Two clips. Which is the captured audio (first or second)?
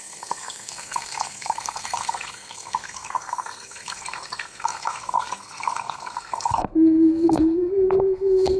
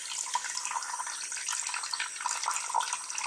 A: second